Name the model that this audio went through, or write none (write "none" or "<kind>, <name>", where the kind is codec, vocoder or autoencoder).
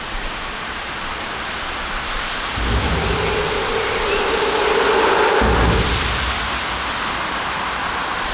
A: none